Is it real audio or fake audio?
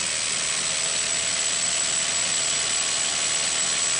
real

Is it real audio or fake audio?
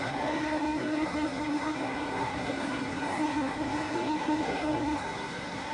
fake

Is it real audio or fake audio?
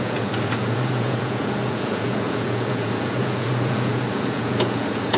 fake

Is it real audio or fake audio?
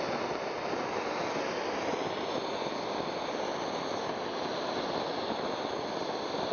real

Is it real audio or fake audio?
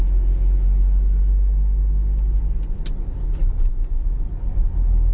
real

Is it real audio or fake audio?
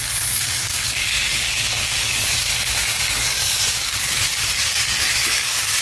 fake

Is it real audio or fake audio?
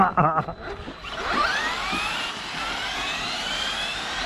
real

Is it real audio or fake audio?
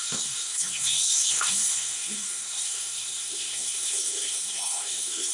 fake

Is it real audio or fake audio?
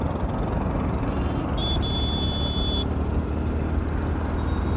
real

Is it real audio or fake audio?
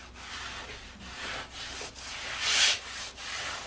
real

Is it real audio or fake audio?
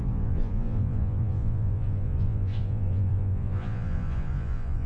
fake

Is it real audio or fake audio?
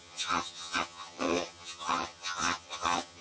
fake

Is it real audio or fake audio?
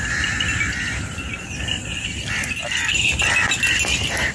real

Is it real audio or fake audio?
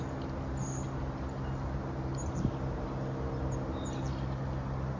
real